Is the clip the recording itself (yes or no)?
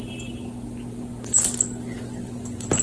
yes